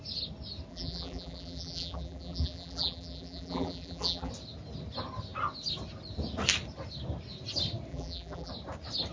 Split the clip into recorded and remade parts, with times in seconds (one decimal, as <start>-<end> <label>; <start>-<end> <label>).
0.0-0.7 recorded; 0.7-4.3 remade; 4.3-7.9 recorded; 7.9-8.5 remade; 8.5-9.1 recorded